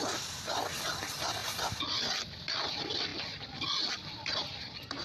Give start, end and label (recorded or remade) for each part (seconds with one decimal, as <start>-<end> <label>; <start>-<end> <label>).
0.0-5.0 recorded